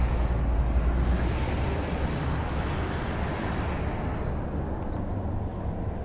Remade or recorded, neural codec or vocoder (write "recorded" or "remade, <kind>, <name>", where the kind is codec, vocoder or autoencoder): recorded